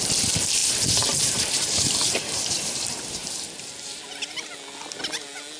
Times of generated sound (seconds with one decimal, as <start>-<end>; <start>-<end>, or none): 0.6-4.0